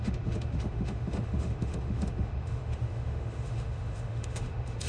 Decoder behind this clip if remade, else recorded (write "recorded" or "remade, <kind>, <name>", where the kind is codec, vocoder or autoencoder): remade, autoencoder, DAC-VAE